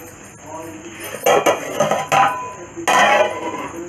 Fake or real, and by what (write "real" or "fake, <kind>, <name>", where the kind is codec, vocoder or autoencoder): real